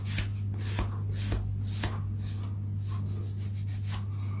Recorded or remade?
recorded